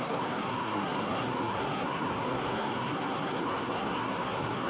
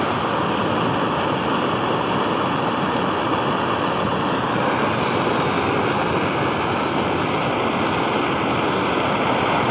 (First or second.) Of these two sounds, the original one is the second